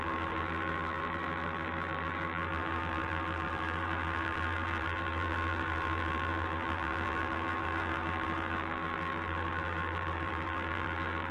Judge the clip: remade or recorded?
remade